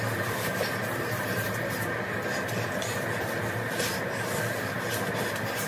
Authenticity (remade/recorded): recorded